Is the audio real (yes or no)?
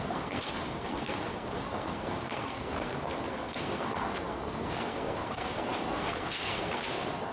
no